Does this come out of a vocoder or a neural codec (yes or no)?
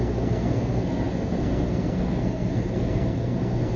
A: yes